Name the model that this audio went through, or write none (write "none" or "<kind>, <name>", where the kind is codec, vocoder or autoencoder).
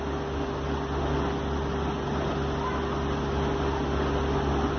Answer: none